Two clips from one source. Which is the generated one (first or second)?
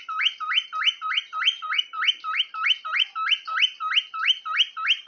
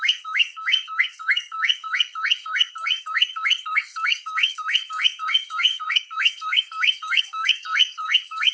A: second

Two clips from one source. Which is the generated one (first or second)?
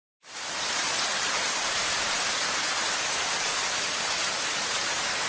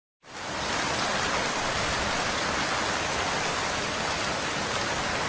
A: first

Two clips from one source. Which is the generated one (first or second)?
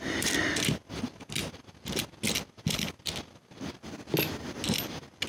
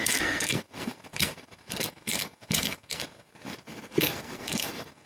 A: second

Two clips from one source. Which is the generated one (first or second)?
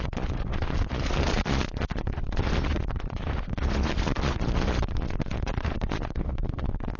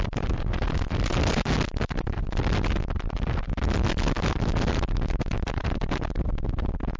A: first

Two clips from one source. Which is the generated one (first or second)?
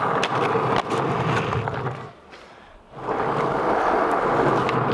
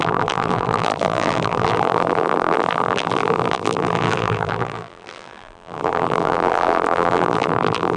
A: second